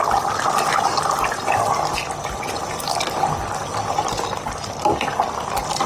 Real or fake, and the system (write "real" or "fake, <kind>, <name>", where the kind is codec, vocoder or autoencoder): real